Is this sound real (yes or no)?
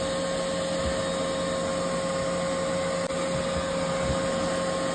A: yes